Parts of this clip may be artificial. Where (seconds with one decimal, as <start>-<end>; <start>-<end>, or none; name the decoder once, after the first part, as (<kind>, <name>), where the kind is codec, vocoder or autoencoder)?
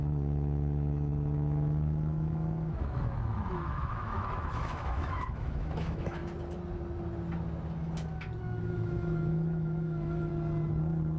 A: 0.0-6.2 (autoencoder, DAC-VAE); 8.6-10.3